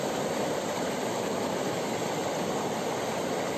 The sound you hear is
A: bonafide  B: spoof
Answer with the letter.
A